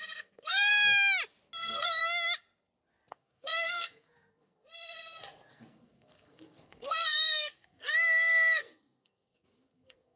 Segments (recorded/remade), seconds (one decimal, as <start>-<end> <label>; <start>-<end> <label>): 0.0-0.7 remade; 0.7-1.6 recorded; 1.6-2.0 remade; 2.0-3.1 recorded; 3.1-10.2 remade